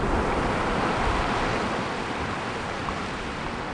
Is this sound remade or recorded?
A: recorded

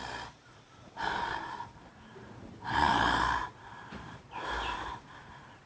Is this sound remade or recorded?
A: remade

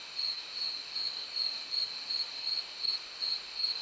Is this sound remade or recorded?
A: remade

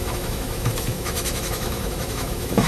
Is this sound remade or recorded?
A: remade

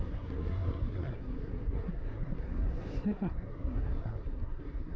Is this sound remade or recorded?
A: remade